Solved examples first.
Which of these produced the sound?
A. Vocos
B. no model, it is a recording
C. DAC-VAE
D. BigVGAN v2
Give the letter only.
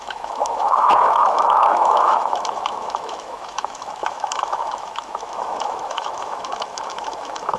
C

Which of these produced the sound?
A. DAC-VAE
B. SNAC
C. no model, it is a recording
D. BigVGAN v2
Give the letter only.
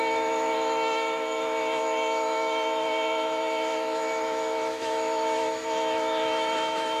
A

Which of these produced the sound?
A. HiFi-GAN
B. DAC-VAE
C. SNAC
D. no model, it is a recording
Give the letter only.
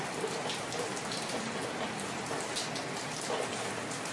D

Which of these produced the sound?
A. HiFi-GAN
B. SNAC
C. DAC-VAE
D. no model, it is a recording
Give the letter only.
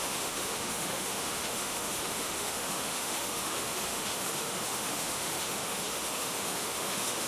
C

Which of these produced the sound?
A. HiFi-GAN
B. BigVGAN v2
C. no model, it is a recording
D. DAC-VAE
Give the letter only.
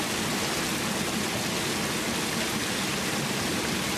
C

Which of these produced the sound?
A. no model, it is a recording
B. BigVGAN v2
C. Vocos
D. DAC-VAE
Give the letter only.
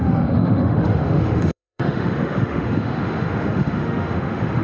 D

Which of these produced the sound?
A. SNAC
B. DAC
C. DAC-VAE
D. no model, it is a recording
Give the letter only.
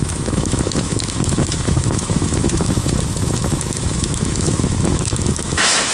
C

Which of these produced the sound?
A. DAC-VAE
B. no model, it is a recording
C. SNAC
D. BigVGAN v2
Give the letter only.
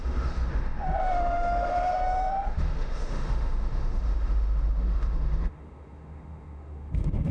A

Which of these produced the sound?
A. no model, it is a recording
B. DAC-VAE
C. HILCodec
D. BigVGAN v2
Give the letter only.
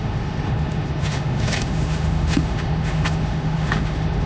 B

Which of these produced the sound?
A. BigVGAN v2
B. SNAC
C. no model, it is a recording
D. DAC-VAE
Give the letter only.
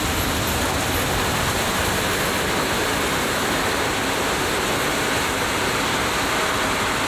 C